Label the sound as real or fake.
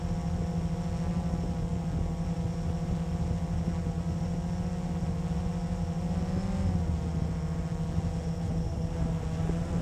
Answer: real